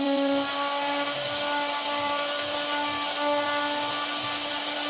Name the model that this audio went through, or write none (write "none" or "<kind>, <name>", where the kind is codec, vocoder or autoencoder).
none